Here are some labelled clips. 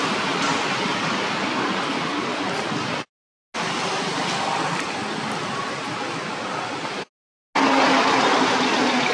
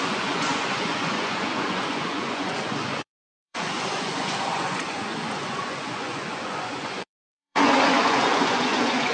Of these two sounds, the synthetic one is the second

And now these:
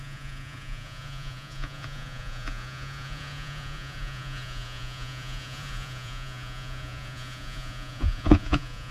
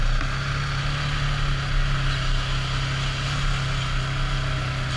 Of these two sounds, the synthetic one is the first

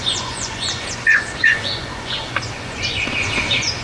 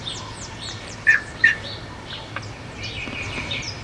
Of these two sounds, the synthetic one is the first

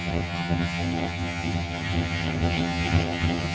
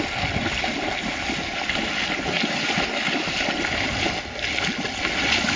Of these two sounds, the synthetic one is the first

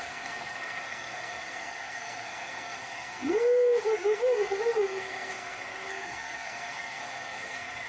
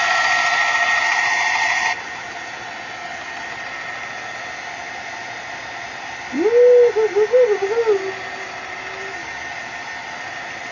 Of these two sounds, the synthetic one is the first